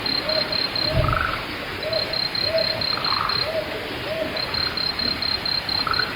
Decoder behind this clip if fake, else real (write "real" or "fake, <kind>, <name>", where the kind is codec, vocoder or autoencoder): real